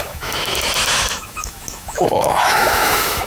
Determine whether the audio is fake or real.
fake